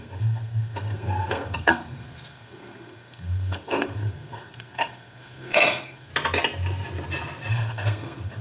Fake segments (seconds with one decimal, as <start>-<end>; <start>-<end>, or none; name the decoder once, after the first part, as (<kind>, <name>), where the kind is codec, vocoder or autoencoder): 0.0-6.1 (codec, SNAC); 7.5-8.4